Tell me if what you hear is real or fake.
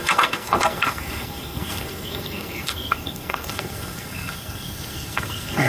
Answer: fake